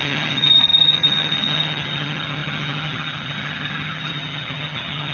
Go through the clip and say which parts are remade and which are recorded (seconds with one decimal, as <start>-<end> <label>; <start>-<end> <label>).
0.0-5.1 remade